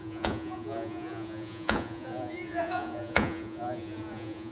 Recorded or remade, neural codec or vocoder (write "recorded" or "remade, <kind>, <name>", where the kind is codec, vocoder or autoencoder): remade, vocoder, Vocos